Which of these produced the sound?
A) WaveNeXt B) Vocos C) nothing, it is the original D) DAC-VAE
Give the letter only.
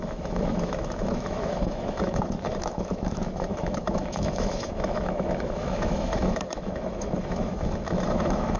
D